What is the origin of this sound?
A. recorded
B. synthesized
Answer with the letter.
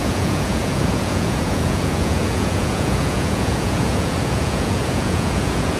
B